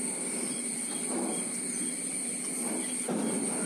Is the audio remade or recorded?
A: remade